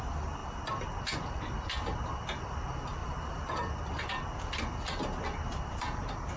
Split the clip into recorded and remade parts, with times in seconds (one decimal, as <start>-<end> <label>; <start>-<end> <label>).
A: 0.0-3.0 recorded; 3.0-3.9 remade; 3.9-6.4 recorded